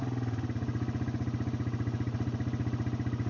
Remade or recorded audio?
recorded